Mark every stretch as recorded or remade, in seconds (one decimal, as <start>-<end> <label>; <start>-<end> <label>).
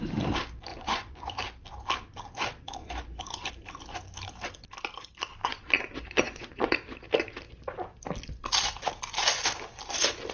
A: 0.0-0.7 recorded; 0.7-1.3 remade; 1.3-2.8 recorded; 2.8-3.5 remade; 3.5-5.4 recorded; 5.4-6.7 remade; 6.7-10.3 recorded